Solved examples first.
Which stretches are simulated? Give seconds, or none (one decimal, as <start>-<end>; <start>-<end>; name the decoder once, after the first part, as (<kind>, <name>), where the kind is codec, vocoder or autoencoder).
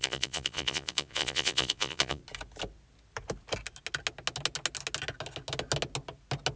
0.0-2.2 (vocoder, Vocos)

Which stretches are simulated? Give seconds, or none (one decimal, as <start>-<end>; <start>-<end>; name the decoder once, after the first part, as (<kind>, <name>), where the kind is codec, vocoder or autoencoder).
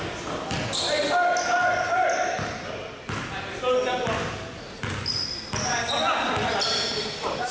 none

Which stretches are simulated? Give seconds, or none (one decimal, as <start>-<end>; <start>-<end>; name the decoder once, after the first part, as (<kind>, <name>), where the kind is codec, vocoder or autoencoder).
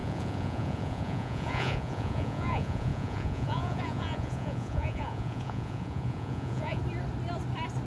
0.0-6.8 (vocoder, Vocos)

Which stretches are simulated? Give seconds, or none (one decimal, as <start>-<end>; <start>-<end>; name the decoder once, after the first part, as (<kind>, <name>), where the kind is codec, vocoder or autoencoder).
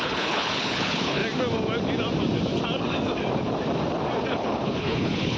0.0-1.2 (codec, HILCodec); 4.3-5.4